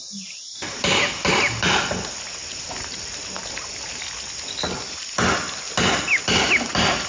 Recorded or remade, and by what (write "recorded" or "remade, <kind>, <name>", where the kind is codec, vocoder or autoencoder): recorded